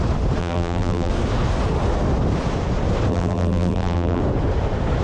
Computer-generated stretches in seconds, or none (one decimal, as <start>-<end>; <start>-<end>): 0.4-1.1; 3.1-4.2